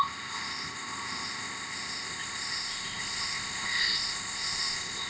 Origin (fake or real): fake